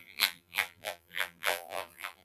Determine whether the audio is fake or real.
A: fake